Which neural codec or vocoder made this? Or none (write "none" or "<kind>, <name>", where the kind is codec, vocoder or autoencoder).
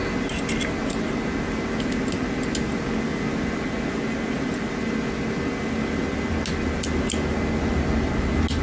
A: none